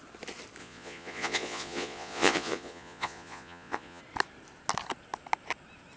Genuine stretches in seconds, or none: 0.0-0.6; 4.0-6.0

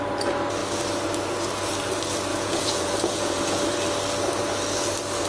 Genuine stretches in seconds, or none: 0.0-2.3; 3.6-5.3

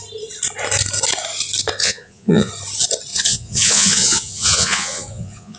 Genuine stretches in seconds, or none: 0.0-1.8; 2.5-3.1

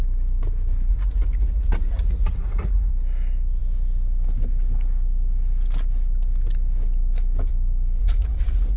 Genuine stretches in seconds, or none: 0.0-0.9; 2.9-8.0

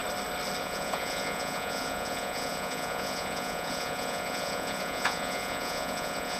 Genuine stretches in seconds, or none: 0.0-0.6